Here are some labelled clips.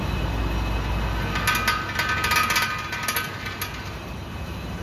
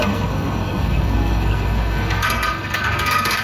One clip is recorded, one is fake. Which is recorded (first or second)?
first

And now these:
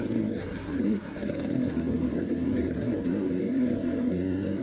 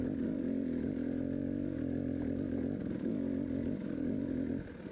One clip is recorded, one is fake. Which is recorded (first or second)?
second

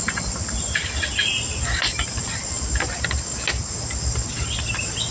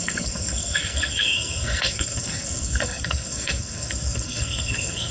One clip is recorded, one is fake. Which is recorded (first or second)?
first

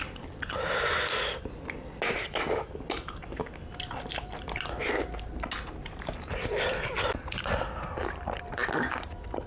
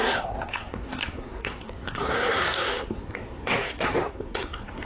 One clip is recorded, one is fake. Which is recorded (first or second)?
first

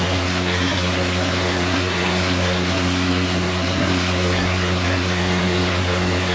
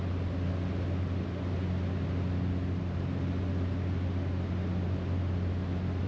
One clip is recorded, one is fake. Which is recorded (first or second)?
second